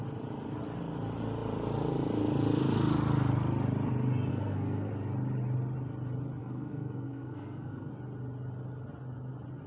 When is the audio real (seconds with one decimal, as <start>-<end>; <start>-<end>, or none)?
0.0-4.3; 4.9-6.4; 7.9-9.7